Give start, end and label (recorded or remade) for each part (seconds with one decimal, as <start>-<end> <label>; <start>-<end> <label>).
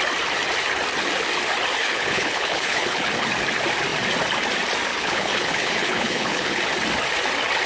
0.0-1.8 recorded; 1.8-3.1 remade; 3.1-4.9 recorded; 4.9-6.6 remade; 6.6-7.7 recorded